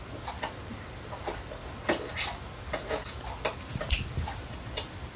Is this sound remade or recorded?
recorded